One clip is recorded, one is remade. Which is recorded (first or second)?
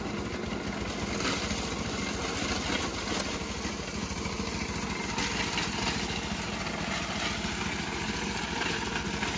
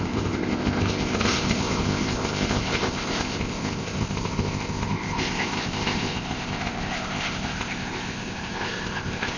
first